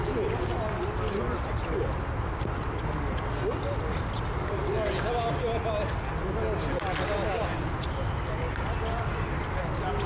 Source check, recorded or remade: recorded